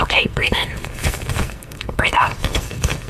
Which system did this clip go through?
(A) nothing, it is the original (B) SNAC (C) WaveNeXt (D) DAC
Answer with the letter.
B